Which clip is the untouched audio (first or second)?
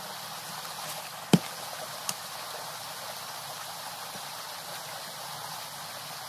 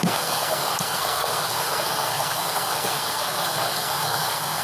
first